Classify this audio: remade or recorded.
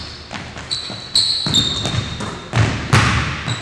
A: recorded